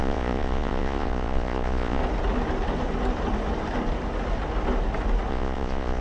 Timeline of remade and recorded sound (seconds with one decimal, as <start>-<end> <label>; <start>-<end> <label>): 0.0-2.0 remade; 2.0-5.3 recorded; 5.3-6.0 remade